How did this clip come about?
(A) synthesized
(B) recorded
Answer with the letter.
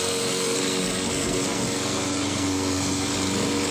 A